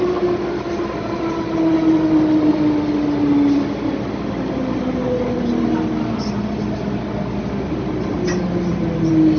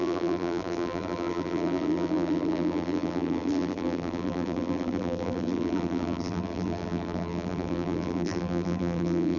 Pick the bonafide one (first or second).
first